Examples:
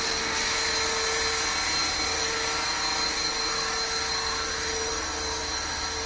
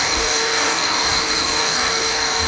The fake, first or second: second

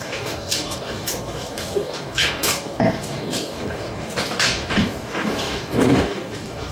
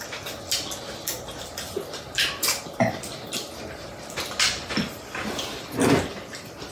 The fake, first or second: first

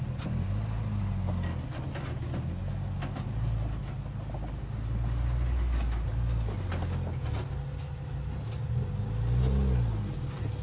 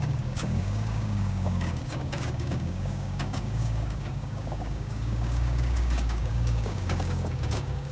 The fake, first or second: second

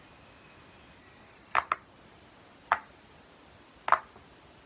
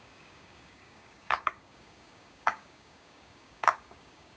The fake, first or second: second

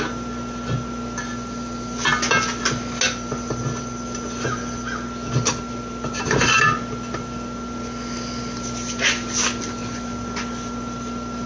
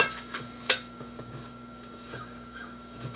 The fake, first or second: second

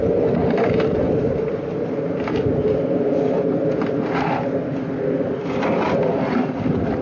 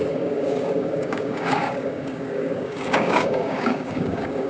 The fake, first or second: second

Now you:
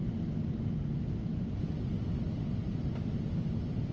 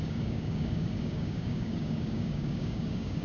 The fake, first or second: second